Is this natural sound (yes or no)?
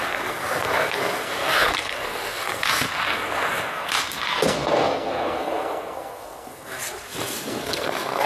no